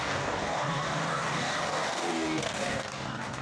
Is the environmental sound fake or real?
fake